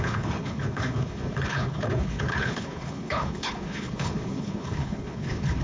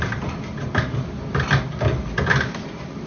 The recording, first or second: second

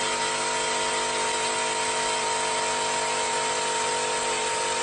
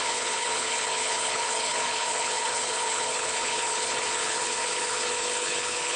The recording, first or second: first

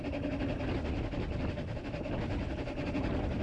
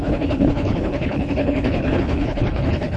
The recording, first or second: first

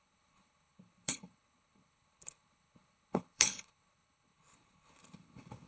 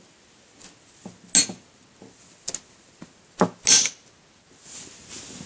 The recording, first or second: second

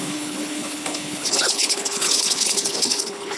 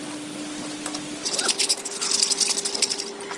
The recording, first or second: second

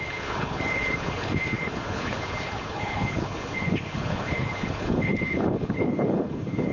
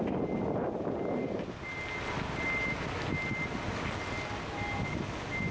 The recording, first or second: second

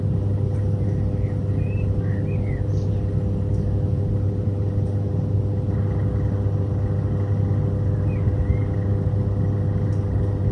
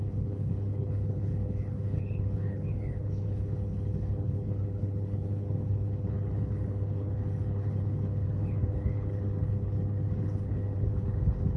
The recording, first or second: first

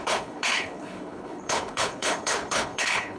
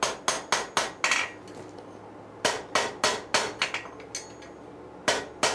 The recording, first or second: second